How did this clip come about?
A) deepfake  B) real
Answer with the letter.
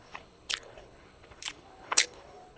A